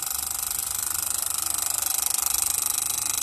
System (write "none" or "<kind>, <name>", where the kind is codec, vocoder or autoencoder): none